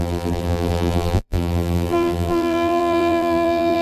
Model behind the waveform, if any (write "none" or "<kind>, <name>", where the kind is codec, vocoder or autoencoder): vocoder, BigVGAN v2